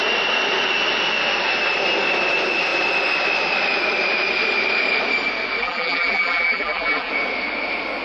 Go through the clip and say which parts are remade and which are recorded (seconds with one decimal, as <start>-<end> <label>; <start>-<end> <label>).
0.0-5.6 recorded; 5.6-7.1 remade; 7.1-8.0 recorded